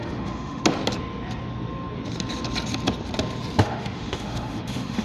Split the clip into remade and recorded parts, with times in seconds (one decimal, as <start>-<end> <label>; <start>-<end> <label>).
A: 0.0-0.6 remade; 0.6-3.6 recorded; 3.6-5.0 remade